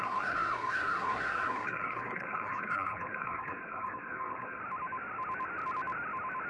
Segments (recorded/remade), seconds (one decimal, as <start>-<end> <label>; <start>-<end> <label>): 0.0-4.6 remade; 4.6-6.5 recorded